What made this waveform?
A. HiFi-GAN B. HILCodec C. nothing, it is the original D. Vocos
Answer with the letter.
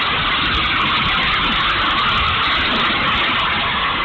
C